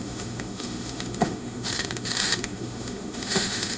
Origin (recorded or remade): remade